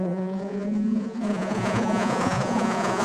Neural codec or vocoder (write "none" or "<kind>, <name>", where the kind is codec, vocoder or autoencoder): vocoder, Vocos